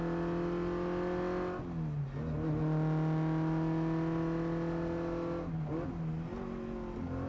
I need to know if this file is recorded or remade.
recorded